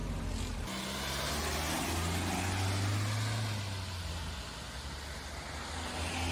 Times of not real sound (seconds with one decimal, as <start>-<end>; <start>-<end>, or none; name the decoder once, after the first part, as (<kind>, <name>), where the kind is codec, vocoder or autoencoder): none